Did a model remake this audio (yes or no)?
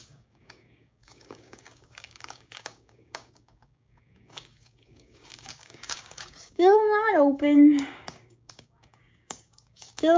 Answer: yes